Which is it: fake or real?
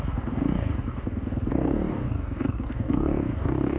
fake